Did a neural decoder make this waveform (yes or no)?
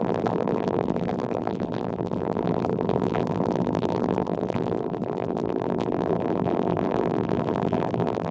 yes